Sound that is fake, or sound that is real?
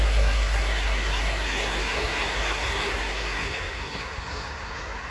fake